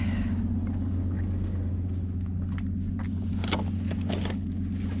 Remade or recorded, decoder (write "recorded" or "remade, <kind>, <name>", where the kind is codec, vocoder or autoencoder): recorded